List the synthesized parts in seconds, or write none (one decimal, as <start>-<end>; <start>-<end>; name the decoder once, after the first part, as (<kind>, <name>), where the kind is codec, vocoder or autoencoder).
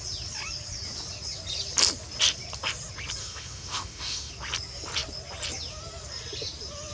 3.2-4.3 (autoencoder, DAC-VAE)